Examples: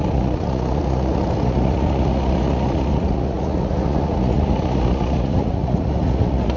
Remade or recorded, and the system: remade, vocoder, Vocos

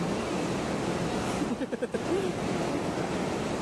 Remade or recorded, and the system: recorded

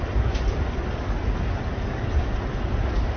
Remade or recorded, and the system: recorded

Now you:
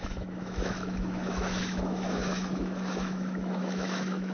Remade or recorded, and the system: remade, autoencoder, DAC-VAE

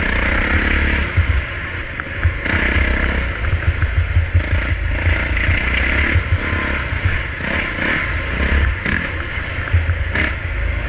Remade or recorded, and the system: recorded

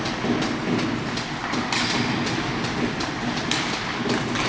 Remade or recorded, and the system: recorded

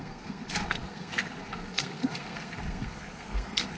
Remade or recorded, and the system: remade, codec, SNAC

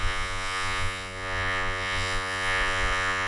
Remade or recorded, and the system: remade, vocoder, Vocos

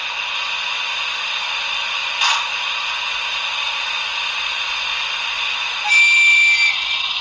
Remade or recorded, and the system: recorded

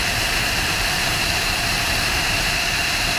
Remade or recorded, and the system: remade, vocoder, BigVGAN v2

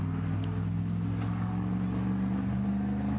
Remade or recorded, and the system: recorded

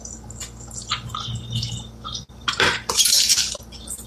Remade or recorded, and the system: recorded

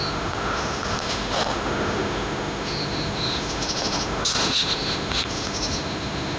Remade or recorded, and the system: remade, autoencoder, DAC-VAE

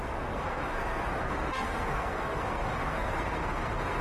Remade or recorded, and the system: remade, codec, SNAC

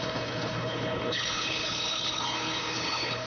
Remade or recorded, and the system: remade, codec, HILCodec